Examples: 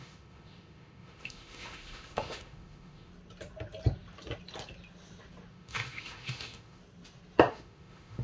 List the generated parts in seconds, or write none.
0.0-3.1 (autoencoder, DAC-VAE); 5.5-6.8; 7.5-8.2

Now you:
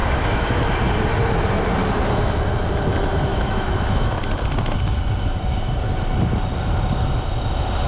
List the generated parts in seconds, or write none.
0.0-0.6 (autoencoder, DAC-VAE); 3.3-4.2

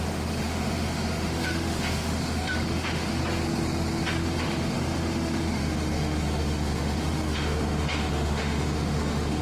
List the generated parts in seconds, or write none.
0.0-3.2 (autoencoder, DAC-VAE); 4.1-9.4